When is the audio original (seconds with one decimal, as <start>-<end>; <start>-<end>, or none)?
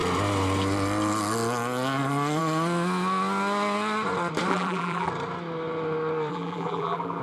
0.0-4.5; 5.1-6.3